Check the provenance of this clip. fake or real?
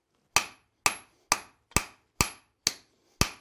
real